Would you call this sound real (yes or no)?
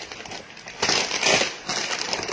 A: yes